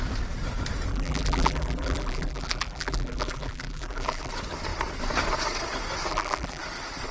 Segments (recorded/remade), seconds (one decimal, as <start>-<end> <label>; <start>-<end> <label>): 0.0-0.9 recorded; 0.9-4.3 remade; 4.3-6.1 recorded; 6.1-6.6 remade; 6.6-7.1 recorded